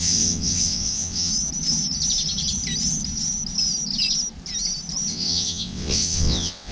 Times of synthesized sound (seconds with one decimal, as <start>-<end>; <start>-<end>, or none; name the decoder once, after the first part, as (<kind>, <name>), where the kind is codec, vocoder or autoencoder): 0.0-1.3 (vocoder, WaveNeXt); 5.1-6.7